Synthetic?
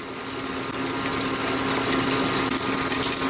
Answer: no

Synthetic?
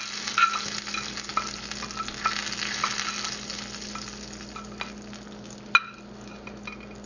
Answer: no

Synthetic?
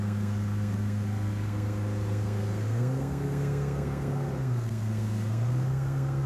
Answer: yes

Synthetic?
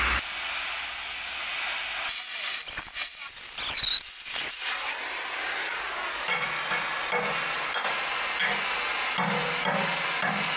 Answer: no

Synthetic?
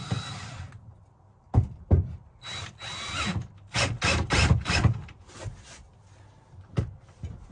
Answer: no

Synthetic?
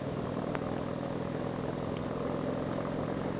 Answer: no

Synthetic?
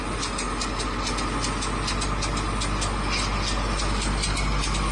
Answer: no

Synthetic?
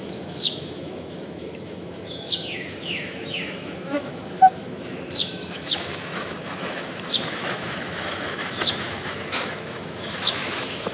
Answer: yes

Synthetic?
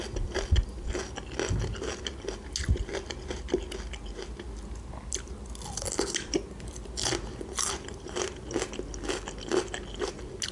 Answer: no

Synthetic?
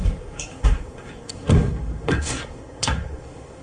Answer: yes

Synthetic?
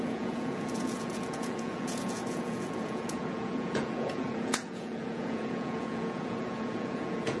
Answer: yes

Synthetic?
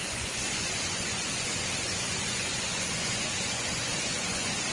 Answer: yes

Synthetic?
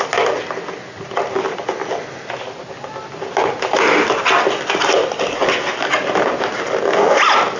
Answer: no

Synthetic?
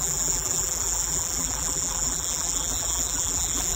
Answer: yes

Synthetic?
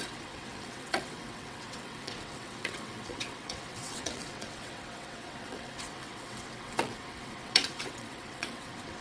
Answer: yes